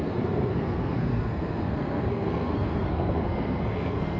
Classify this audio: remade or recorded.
remade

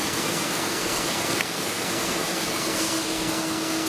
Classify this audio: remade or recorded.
remade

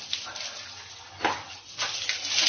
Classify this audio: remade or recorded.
recorded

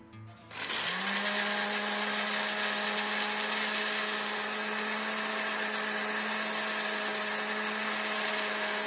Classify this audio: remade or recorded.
recorded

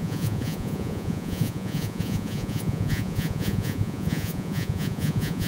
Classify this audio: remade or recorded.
remade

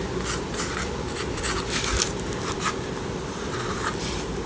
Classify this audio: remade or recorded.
recorded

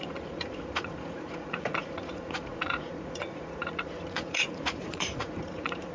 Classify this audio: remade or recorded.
remade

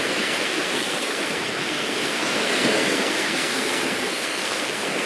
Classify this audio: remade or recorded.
remade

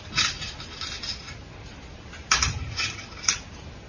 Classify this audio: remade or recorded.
recorded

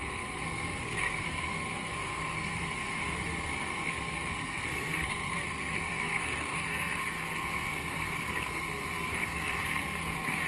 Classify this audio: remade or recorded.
remade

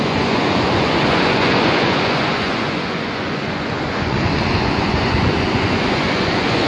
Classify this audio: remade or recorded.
remade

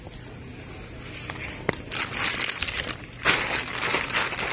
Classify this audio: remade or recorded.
recorded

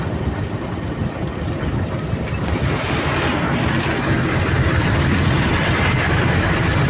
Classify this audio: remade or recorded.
remade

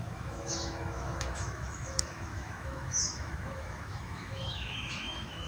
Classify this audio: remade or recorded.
remade